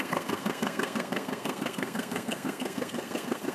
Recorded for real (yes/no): no